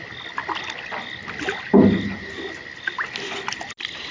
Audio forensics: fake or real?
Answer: real